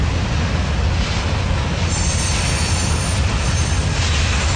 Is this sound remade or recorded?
recorded